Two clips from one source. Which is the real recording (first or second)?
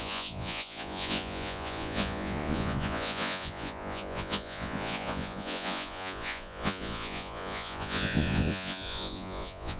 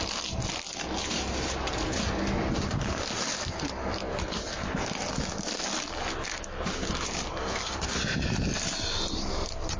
second